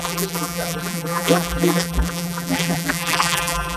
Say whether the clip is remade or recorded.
remade